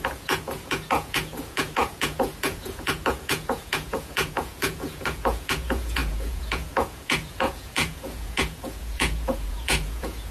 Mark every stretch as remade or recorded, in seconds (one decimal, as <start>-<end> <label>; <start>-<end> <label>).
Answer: 0.0-10.3 remade